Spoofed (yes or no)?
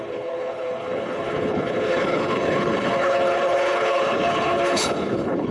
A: yes